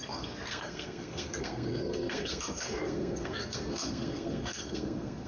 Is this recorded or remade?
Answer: remade